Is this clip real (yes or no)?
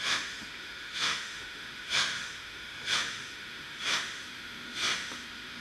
no